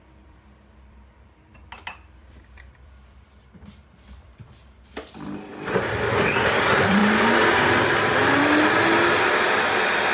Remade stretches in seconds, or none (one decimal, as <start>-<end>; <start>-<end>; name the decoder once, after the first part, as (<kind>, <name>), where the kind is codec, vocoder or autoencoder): 0.0-5.5 (vocoder, BigVGAN v2); 6.2-7.0; 9.2-10.1